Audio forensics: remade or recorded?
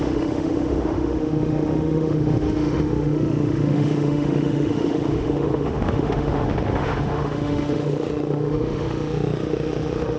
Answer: remade